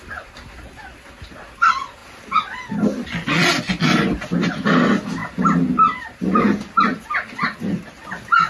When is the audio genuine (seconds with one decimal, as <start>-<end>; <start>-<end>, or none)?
0.0-8.5